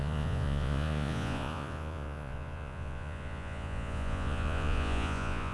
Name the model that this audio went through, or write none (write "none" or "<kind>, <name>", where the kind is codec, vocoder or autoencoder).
vocoder, Vocos